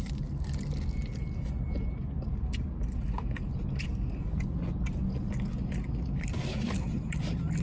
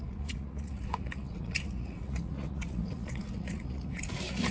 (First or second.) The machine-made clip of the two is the second